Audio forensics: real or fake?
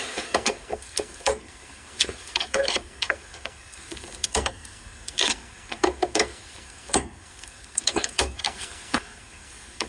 fake